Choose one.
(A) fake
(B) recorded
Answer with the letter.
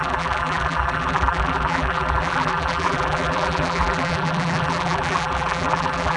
A